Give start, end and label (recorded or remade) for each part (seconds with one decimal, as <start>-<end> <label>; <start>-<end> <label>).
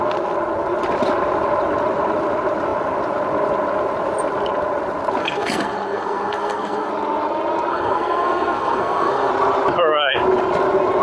0.0-5.2 recorded; 5.2-6.9 remade; 6.9-7.7 recorded; 7.7-9.3 remade; 9.3-11.0 recorded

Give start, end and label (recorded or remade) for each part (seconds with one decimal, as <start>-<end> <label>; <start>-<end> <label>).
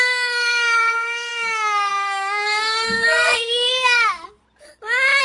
0.0-4.4 remade; 4.4-5.2 recorded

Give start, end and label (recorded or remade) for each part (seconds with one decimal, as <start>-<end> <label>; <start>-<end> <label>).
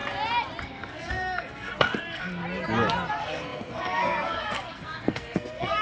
0.0-0.6 recorded; 0.6-2.4 remade; 2.4-3.1 recorded; 3.1-5.8 remade